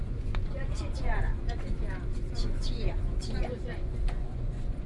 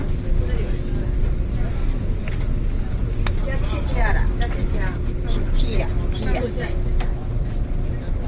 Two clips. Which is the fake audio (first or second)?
first